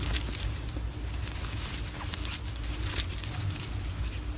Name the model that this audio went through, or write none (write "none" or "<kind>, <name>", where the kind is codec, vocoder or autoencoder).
none